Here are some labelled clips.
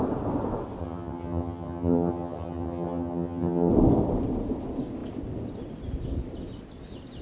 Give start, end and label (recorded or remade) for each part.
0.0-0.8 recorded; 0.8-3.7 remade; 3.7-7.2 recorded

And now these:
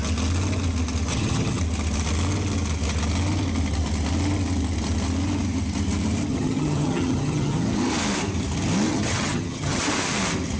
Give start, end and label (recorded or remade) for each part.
0.0-1.1 recorded; 1.1-1.6 remade; 1.6-6.3 recorded; 6.3-7.8 remade; 7.8-8.9 recorded; 8.9-9.8 remade; 9.8-10.6 recorded

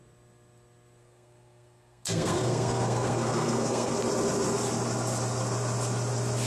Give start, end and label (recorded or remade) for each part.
0.0-1.0 recorded; 1.0-3.9 remade; 3.9-6.5 recorded

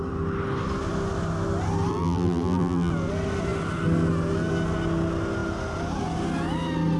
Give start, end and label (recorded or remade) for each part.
0.0-1.9 recorded; 1.9-2.9 remade; 2.9-7.0 recorded

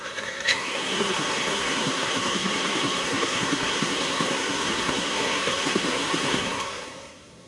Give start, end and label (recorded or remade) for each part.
0.0-7.5 remade

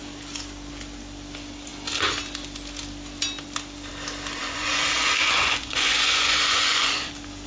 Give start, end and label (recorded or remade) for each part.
0.0-4.4 recorded; 4.4-7.1 remade; 7.1-7.5 recorded

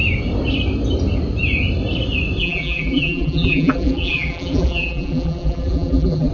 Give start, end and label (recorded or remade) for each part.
0.0-2.4 recorded; 2.4-6.3 remade